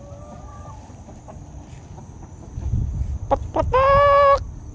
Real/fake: real